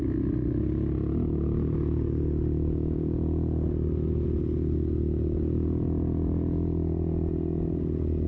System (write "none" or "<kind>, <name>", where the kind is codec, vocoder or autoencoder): none